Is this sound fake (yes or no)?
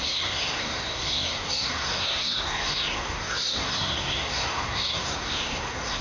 yes